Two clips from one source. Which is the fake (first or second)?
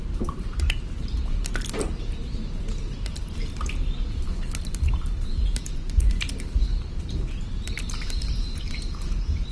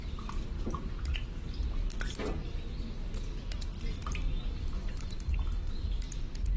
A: first